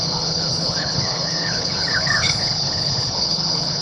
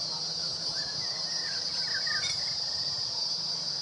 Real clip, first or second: second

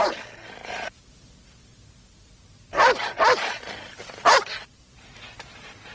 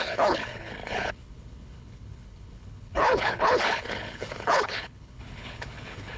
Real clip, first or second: first